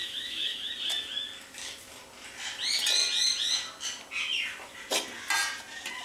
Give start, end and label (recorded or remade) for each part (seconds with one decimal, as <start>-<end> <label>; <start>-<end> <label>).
0.0-0.7 remade; 0.7-6.0 recorded